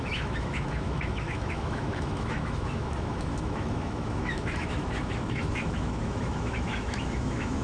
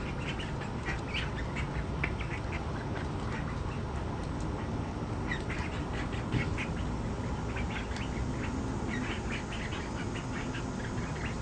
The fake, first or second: first